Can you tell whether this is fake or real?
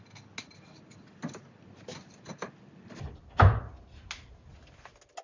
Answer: real